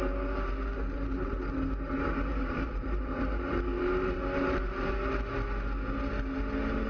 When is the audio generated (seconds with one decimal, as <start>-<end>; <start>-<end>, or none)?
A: 2.3-4.6